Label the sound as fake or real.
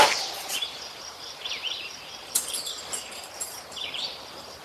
fake